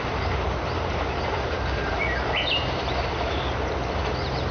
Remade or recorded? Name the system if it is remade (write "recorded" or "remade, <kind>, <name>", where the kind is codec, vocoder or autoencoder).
remade, vocoder, BigVGAN v2